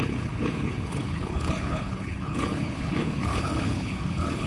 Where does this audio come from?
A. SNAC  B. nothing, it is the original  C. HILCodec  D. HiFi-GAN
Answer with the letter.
C